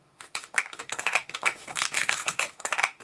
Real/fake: fake